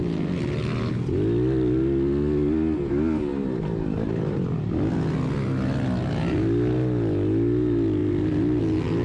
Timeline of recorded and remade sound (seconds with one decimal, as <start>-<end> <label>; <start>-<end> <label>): 0.0-9.0 recorded